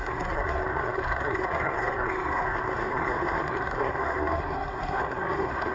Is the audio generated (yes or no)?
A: yes